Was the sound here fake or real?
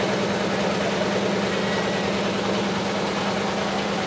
real